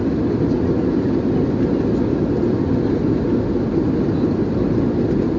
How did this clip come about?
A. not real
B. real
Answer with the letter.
B